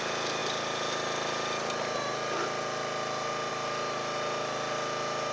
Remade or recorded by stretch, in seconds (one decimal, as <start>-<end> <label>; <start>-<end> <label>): 0.0-5.3 recorded